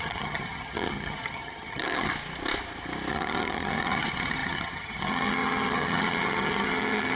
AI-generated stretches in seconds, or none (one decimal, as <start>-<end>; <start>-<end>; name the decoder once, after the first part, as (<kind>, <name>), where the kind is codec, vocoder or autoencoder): 0.0-2.1 (vocoder, HiFi-GAN); 3.1-7.2